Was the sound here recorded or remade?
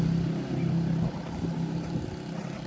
recorded